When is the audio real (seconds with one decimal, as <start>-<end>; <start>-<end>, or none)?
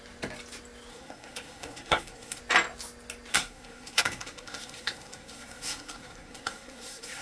0.0-0.9; 2.4-3.3